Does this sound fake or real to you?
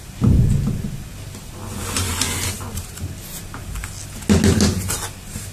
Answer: real